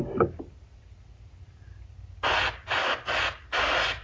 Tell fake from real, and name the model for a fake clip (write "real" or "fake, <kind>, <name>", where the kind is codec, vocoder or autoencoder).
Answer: real